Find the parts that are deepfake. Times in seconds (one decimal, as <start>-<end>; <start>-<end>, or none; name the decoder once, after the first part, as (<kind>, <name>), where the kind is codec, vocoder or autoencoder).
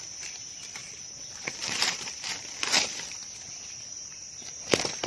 0.8-2.3 (vocoder, BigVGAN v2)